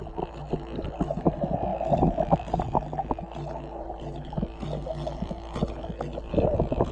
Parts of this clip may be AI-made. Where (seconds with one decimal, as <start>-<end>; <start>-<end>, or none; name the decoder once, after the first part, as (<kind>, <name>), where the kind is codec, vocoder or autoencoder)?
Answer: none